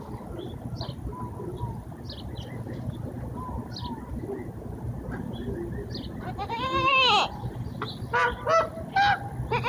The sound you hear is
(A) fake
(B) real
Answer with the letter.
B